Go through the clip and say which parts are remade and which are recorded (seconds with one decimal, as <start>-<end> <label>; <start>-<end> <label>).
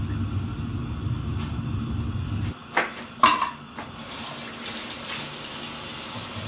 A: 0.0-6.5 recorded